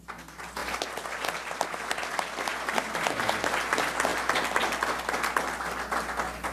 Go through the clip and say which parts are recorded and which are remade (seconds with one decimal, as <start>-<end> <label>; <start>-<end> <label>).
0.0-6.5 recorded